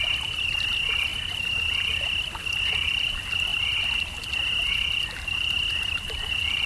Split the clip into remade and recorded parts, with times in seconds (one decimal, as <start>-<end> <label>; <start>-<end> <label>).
0.0-6.7 recorded